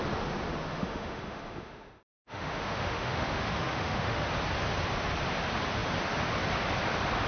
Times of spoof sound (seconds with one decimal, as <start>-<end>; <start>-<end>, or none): 0.7-4.3